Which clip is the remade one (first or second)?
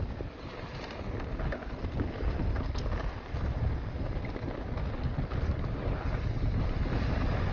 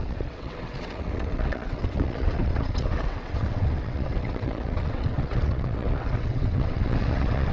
second